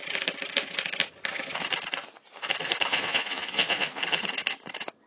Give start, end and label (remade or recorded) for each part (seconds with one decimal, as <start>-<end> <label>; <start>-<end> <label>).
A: 0.0-2.9 recorded; 2.9-4.0 remade; 4.0-5.1 recorded